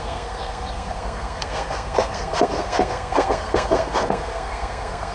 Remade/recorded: remade